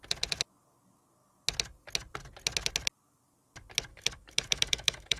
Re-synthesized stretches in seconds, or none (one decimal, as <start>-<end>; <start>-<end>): 3.9-5.2